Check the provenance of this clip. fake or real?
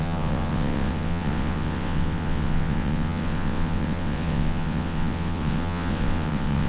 fake